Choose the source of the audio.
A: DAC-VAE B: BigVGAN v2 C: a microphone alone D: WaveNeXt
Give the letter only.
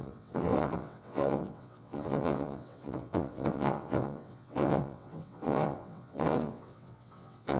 D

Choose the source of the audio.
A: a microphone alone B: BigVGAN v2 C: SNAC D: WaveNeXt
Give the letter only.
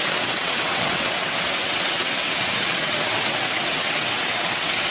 D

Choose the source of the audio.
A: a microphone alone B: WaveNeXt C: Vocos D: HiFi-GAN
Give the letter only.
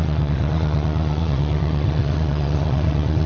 B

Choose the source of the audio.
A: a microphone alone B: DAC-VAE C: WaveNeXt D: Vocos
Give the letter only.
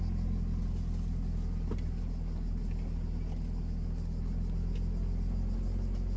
A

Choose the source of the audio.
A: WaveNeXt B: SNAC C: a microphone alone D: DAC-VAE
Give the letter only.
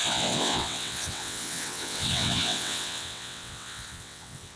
A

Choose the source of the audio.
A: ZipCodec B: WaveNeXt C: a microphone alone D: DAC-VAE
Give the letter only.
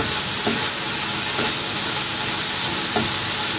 C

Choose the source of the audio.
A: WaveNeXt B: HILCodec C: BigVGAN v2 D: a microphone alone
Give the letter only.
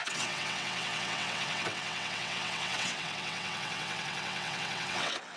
A